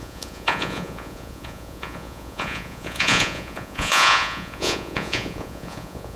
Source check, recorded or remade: remade